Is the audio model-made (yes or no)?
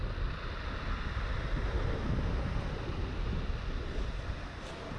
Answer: no